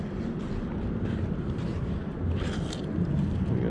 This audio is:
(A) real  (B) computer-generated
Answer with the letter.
A